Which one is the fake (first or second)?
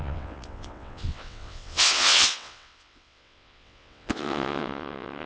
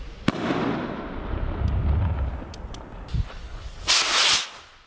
first